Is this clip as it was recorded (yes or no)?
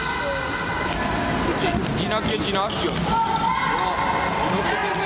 yes